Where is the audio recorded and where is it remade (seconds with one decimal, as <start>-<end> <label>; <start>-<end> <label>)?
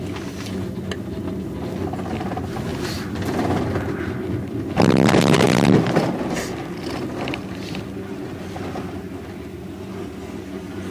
0.0-10.9 recorded